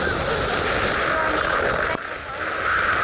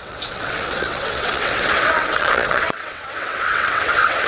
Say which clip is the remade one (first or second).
second